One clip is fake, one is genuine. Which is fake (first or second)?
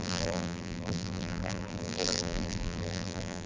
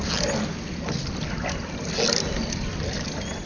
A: first